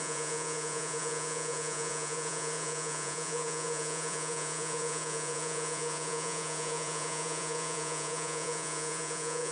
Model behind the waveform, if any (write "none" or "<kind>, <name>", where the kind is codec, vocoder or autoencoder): vocoder, Vocos